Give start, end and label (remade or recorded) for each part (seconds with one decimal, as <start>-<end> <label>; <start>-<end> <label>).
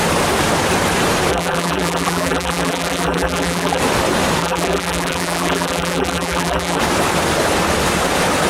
0.0-1.3 recorded; 1.3-3.8 remade; 3.8-4.4 recorded; 4.4-6.8 remade; 6.8-8.5 recorded